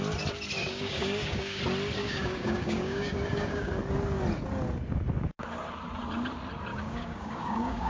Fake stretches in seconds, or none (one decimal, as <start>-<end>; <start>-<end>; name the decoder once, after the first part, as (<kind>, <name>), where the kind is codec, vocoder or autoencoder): 0.6-1.6 (codec, DAC); 2.0-3.7; 6.7-7.9